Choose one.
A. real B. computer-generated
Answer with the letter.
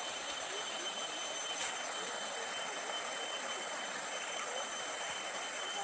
A